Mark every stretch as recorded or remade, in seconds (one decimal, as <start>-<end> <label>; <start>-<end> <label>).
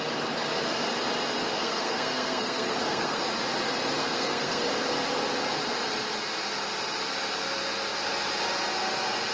0.0-1.5 recorded; 1.5-3.2 remade; 3.2-4.0 recorded; 4.0-4.7 remade; 4.7-9.3 recorded